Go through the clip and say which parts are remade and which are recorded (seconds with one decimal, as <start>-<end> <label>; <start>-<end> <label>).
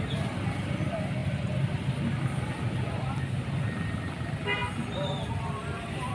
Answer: 0.0-6.1 recorded